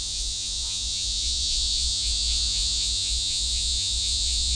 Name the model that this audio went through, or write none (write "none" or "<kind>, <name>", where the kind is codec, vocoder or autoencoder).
vocoder, Vocos